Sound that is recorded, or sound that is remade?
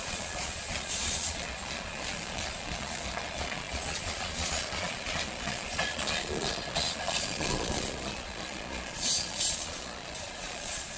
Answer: remade